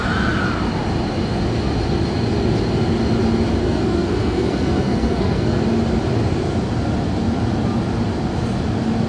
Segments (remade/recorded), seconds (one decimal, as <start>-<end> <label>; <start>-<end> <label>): 0.0-3.6 recorded; 3.6-5.6 remade; 5.6-9.1 recorded